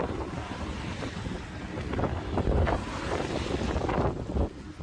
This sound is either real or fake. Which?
real